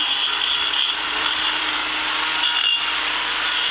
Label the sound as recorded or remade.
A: remade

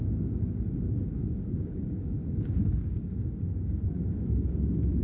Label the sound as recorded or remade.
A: remade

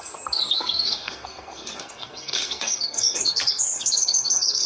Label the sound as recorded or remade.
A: remade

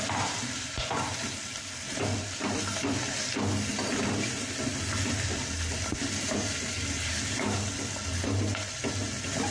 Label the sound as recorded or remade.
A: recorded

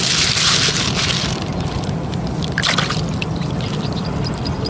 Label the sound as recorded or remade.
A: remade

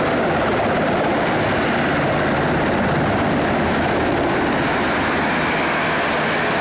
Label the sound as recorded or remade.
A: recorded